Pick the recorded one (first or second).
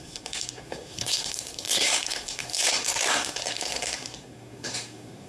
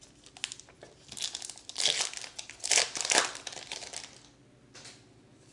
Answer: second